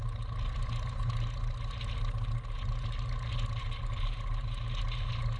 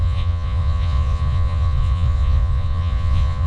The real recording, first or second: first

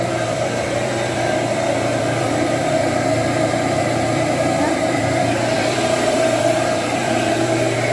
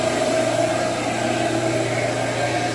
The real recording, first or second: second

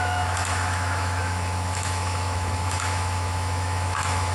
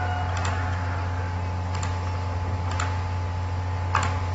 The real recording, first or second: second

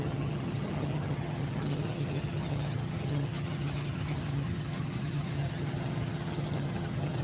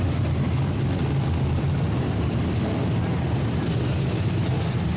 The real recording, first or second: second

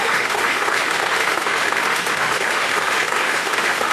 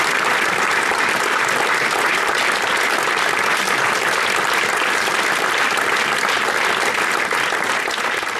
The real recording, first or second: second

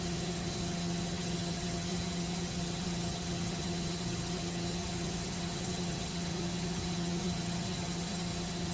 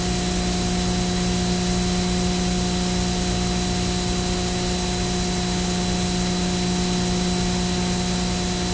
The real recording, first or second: second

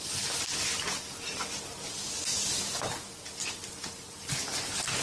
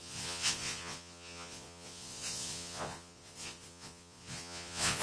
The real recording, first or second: first